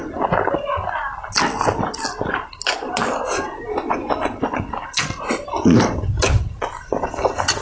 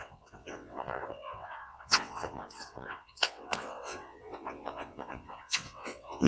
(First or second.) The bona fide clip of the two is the first